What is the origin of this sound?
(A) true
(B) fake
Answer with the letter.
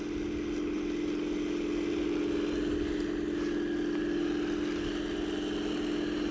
A